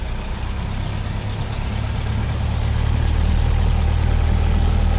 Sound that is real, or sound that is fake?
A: real